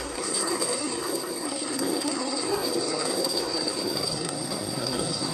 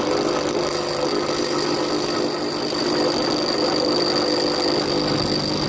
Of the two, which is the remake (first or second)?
first